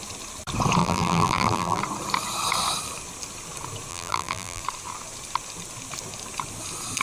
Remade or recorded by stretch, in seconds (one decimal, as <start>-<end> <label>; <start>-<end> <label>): 0.0-0.8 recorded; 0.8-1.8 remade; 1.8-3.9 recorded; 3.9-4.6 remade; 4.6-7.0 recorded